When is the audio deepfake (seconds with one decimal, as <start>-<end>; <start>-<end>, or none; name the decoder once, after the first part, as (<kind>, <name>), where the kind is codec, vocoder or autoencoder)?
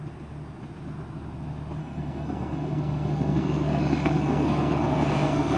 1.8-5.6 (codec, SNAC)